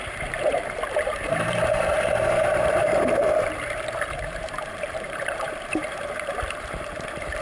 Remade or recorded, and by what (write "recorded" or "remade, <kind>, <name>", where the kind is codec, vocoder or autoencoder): remade, vocoder, BigVGAN v2